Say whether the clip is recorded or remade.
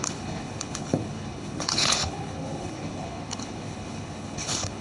remade